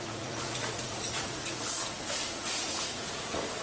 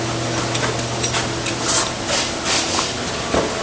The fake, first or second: first